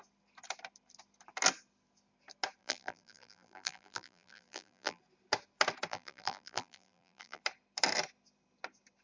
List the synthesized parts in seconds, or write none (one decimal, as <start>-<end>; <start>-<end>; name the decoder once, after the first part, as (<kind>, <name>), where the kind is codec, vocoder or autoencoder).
2.6-5.0 (vocoder, BigVGAN v2); 5.9-7.4